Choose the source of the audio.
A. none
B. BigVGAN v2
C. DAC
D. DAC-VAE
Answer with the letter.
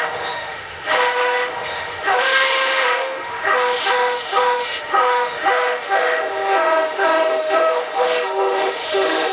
D